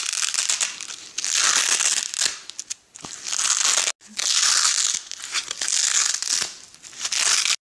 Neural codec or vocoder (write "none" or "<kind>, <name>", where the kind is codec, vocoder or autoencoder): none